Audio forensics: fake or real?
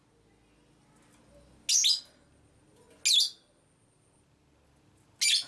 real